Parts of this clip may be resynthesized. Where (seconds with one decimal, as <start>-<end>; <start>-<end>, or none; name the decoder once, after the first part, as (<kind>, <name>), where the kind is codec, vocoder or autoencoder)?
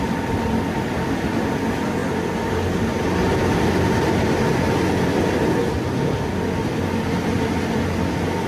none